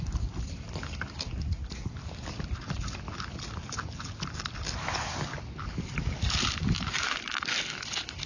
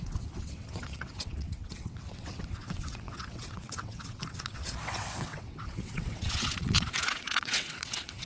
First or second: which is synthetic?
second